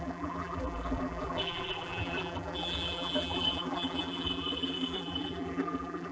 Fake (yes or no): yes